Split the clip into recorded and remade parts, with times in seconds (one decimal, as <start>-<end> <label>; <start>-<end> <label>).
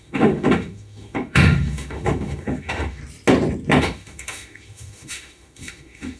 0.0-3.0 remade; 3.0-3.8 recorded; 3.8-6.2 remade